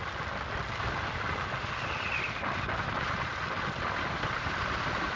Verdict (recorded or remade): recorded